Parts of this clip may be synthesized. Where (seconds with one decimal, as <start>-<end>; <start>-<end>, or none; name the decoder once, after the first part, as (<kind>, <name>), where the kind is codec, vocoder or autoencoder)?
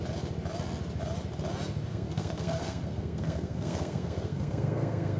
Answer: 1.9-5.2 (codec, SNAC)